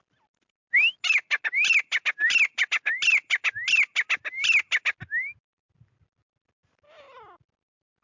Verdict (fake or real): real